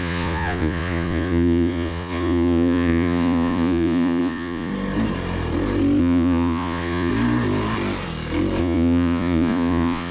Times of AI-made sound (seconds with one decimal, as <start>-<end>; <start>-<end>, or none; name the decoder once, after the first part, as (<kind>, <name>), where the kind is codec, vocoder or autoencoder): 0.0-4.7 (vocoder, Vocos); 6.0-7.1; 8.6-10.1